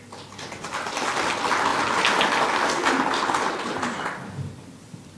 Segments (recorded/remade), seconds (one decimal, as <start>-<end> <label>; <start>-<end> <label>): 0.0-5.2 recorded